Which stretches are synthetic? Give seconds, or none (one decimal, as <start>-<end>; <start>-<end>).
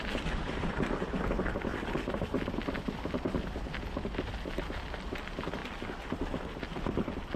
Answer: none